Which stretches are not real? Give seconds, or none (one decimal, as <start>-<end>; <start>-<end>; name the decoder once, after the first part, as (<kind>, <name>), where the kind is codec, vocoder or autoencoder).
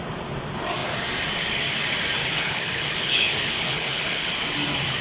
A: 2.2-4.3 (codec, HILCodec)